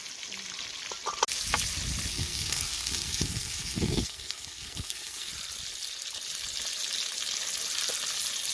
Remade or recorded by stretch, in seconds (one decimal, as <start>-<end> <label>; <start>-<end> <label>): 0.0-2.1 recorded; 2.1-5.3 remade; 5.3-8.5 recorded